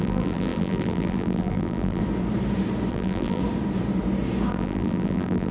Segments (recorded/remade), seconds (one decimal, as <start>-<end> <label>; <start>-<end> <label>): 0.0-2.0 remade; 2.0-2.9 recorded; 2.9-3.4 remade; 3.4-4.5 recorded; 4.5-5.5 remade